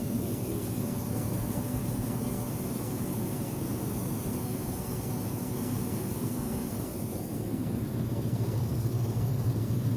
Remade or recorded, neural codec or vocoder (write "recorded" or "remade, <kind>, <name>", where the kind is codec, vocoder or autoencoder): remade, codec, SNAC